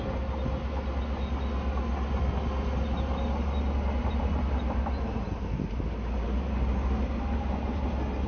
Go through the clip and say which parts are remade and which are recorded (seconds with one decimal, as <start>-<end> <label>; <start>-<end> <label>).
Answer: 0.0-4.0 recorded; 4.0-7.9 remade; 7.9-8.3 recorded